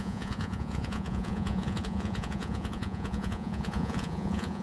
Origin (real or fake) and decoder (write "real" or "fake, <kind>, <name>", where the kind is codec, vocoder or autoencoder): fake, vocoder, Vocos